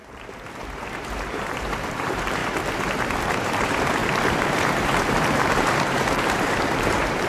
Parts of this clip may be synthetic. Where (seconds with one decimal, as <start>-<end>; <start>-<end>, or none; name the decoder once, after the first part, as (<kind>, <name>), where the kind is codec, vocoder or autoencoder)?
0.6-2.4 (vocoder, BigVGAN v2); 3.3-7.3

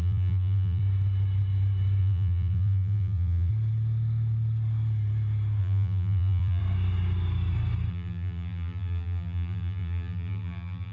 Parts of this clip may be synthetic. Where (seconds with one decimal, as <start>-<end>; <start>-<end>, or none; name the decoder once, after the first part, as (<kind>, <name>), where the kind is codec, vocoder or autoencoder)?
0.0-0.8 (vocoder, BigVGAN v2); 2.0-3.5; 5.6-6.6; 7.9-10.9

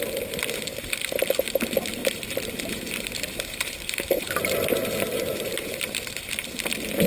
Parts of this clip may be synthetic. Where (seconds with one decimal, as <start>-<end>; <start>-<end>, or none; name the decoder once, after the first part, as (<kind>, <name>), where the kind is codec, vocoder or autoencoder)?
2.0-6.3 (vocoder, BigVGAN v2)

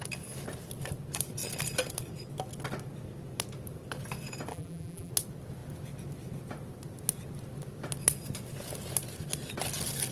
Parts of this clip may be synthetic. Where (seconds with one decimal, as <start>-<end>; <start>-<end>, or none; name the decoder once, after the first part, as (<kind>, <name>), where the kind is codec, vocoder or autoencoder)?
4.5-5.1 (vocoder, BigVGAN v2)

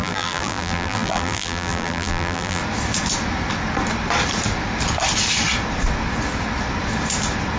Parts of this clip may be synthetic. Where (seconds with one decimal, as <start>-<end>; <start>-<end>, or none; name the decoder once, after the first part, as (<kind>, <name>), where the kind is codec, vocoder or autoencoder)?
0.0-2.6 (vocoder, BigVGAN v2)